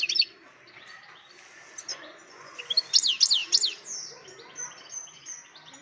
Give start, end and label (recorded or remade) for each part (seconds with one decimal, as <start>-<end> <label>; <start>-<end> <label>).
0.0-1.9 recorded; 1.9-2.6 remade; 2.6-5.8 recorded